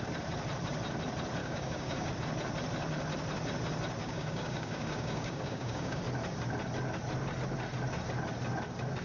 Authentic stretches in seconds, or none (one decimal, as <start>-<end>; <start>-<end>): 0.0-1.4; 2.1-4.0; 6.0-9.0